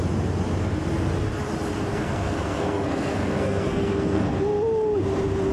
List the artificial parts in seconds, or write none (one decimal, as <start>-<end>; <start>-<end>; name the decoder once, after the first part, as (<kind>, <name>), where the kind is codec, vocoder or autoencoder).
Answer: 1.9-4.3 (codec, SNAC)